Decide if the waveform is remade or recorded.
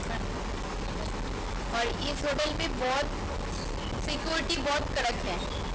recorded